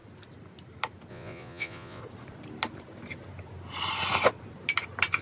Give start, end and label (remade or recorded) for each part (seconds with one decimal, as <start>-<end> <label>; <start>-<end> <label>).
0.0-1.1 recorded; 1.1-2.0 remade; 2.0-5.2 recorded